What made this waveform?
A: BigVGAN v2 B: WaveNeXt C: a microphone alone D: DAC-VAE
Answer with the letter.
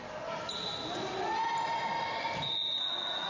C